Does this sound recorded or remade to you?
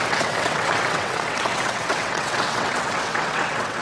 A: remade